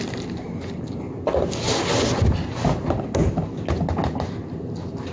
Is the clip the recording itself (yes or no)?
yes